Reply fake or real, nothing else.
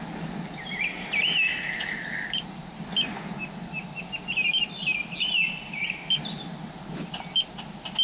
real